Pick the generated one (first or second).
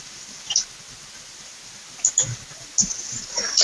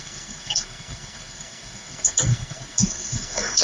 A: second